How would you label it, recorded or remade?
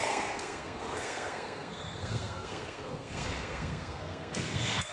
remade